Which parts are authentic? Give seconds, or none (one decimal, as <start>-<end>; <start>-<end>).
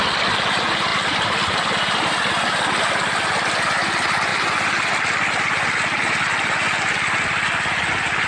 0.0-0.9; 2.2-8.3